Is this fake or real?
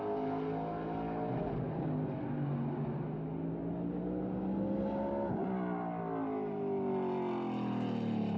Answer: real